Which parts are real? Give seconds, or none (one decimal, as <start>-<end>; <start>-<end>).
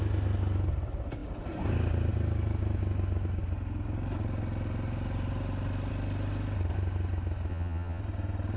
0.0-7.5; 8.0-8.6